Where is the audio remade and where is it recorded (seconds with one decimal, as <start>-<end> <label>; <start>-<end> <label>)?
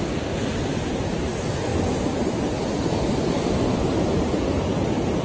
0.0-5.2 recorded